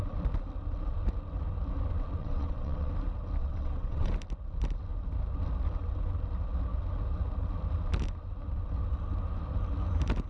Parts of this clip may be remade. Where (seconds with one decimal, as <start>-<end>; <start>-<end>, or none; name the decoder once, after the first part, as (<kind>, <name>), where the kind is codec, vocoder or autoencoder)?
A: 2.2-2.9 (vocoder, WaveNeXt); 3.4-4.1